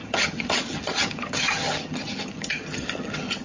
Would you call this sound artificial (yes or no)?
yes